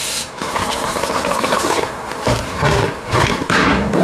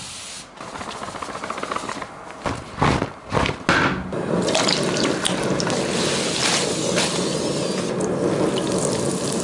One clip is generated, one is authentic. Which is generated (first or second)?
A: first